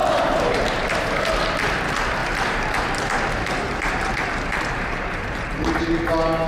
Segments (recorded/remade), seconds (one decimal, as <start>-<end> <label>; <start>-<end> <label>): 0.0-1.4 remade; 1.4-2.2 recorded; 2.2-6.0 remade; 6.0-6.5 recorded